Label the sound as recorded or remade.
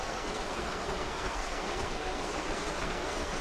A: remade